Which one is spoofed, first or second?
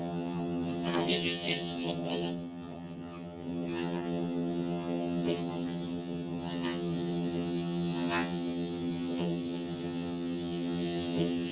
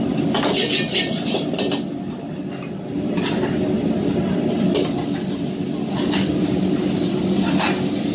first